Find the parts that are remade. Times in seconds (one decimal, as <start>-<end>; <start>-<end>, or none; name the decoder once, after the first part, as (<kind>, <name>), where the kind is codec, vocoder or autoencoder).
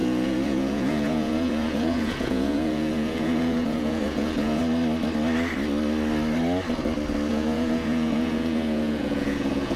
0.0-4.6 (vocoder, Vocos); 7.3-9.8